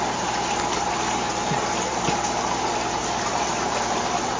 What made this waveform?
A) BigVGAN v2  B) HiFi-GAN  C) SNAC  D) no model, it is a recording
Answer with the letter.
D